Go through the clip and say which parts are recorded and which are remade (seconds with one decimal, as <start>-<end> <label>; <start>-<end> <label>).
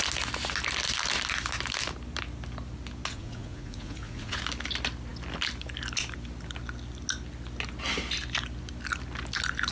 0.0-3.1 recorded; 3.1-4.4 remade; 4.4-9.7 recorded